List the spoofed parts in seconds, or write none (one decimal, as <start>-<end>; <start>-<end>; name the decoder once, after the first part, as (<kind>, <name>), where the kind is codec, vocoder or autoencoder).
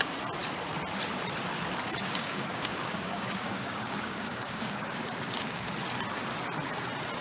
2.0-5.7 (codec, DAC)